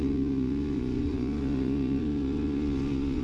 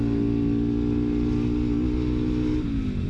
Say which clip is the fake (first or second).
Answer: first